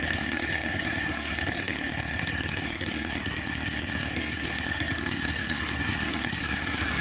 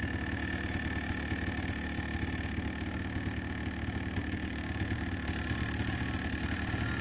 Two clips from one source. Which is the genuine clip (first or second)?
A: second